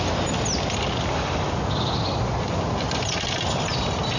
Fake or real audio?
real